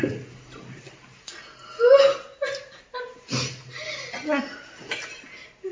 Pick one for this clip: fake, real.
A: real